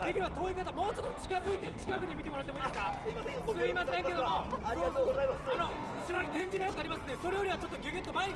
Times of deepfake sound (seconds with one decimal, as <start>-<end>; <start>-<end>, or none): 1.1-2.0; 5.7-6.7